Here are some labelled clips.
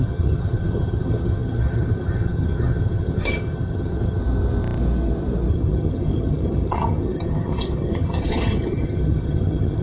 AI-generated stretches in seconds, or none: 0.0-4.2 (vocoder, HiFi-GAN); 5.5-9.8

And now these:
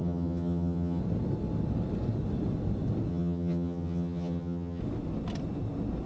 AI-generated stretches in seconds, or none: 0.0-1.0 (vocoder, HiFi-GAN); 3.1-4.8

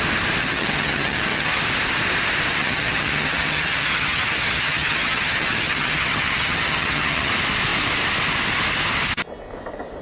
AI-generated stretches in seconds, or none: 0.4-1.6 (vocoder, HiFi-GAN); 2.5-7.3

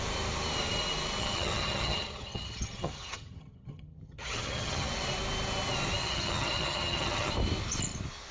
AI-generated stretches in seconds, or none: 1.2-4.9 (vocoder, HiFi-GAN); 6.0-7.3

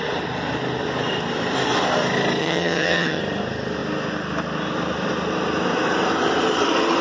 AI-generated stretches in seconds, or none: 2.4-3.2 (vocoder, HiFi-GAN)

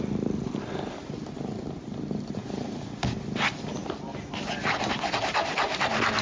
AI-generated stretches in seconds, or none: none

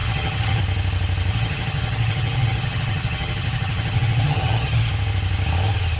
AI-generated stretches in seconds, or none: 0.0-0.6 (vocoder, HiFi-GAN); 1.3-4.9